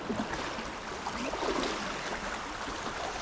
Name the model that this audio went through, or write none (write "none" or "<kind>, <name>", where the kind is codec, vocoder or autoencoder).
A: none